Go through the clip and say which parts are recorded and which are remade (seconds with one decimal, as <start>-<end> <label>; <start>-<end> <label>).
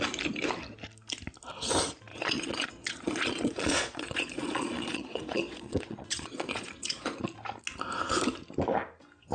0.0-2.1 recorded; 2.1-7.2 remade; 7.2-9.3 recorded